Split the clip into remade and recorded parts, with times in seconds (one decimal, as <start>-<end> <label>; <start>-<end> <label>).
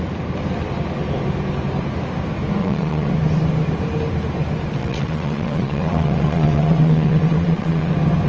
0.0-2.6 recorded; 2.6-3.1 remade; 3.1-4.8 recorded; 4.8-7.9 remade; 7.9-8.3 recorded